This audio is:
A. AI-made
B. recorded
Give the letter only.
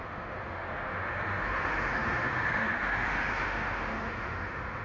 A